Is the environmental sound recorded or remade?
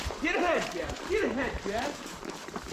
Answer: remade